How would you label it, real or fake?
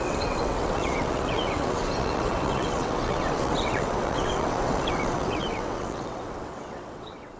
fake